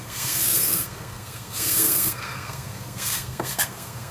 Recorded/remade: remade